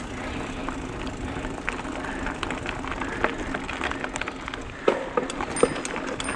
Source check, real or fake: real